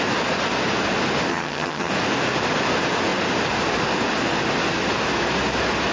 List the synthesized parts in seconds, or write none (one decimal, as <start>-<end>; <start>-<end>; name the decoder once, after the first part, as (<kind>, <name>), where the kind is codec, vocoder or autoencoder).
1.3-1.9 (vocoder, HiFi-GAN)